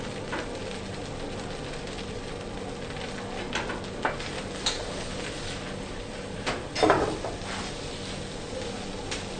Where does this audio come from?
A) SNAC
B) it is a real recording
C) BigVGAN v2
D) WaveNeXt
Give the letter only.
B